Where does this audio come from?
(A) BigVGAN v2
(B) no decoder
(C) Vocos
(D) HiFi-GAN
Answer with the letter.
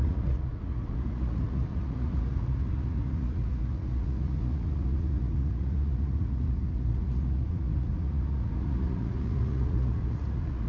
C